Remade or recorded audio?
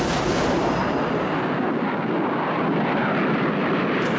recorded